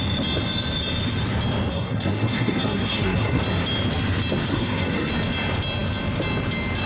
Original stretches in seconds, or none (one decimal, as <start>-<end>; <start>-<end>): 0.0-1.7; 3.4-4.5; 5.1-6.9